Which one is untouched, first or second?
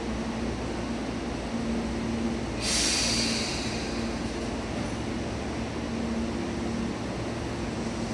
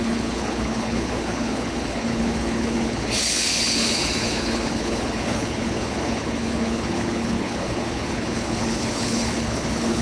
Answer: first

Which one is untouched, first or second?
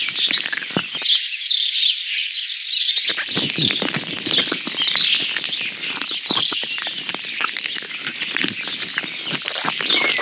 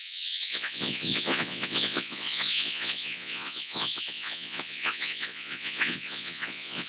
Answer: first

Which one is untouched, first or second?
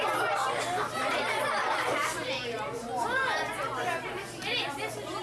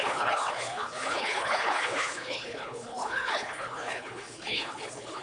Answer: first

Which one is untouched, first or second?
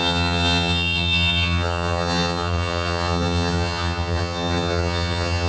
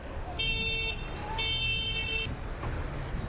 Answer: second